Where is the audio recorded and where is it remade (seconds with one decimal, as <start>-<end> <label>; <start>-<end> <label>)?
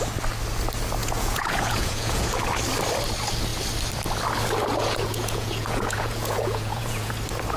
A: 0.0-1.0 recorded; 1.0-2.3 remade; 2.3-4.7 recorded; 4.7-7.1 remade; 7.1-7.6 recorded